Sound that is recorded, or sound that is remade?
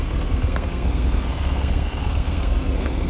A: remade